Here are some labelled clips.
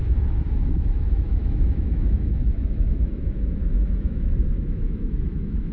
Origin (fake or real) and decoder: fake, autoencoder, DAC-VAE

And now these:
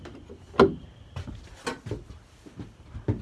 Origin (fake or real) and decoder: real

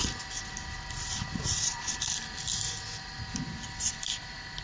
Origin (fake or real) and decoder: real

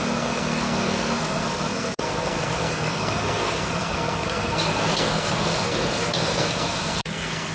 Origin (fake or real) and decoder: fake, codec, SNAC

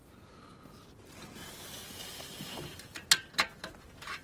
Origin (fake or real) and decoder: real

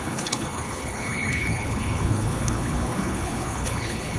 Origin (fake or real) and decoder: fake, codec, HILCodec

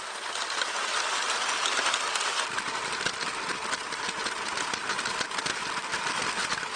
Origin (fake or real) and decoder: real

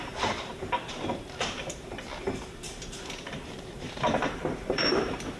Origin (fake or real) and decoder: fake, vocoder, BigVGAN v2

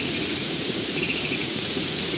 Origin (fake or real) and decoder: fake, vocoder, Vocos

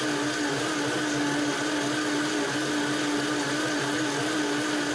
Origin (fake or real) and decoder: real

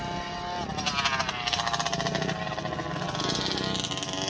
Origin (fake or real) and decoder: real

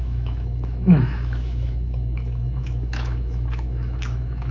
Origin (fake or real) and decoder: fake, autoencoder, DAC-VAE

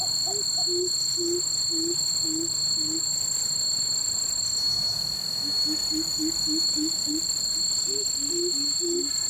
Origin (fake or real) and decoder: real